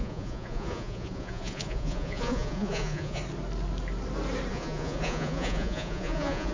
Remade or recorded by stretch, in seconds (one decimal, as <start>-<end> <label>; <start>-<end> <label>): 0.0-3.2 remade; 3.2-4.5 recorded; 4.5-6.5 remade